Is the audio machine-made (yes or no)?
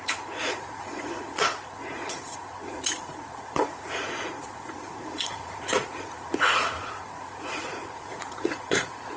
yes